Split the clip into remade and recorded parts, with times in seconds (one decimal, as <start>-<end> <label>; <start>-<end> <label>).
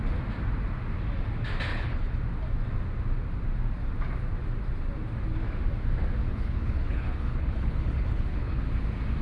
0.0-1.7 recorded; 1.7-2.2 remade; 2.2-6.3 recorded; 6.3-8.6 remade; 8.6-9.2 recorded